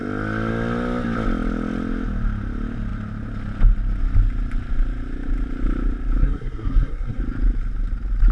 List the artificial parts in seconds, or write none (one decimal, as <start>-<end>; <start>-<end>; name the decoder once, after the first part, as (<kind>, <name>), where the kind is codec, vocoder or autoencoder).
6.2-7.2 (codec, SNAC)